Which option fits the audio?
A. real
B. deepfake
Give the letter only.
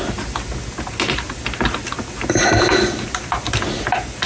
A